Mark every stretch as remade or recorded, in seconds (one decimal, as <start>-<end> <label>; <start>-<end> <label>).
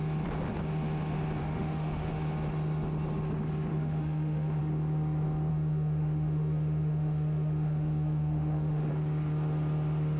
0.0-1.4 recorded; 1.4-2.1 remade; 2.1-3.7 recorded; 3.7-4.6 remade; 4.6-5.5 recorded; 5.5-8.9 remade; 8.9-10.2 recorded